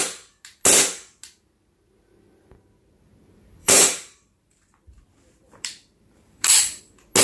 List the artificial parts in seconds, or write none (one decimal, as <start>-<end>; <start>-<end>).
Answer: 3.6-6.8